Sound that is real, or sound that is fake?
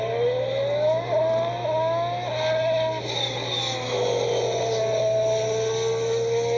real